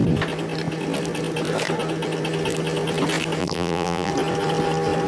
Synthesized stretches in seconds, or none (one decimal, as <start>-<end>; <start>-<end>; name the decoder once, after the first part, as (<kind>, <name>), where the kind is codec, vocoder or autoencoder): 3.4-4.1 (vocoder, BigVGAN v2)